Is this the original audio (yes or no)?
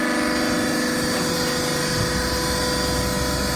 yes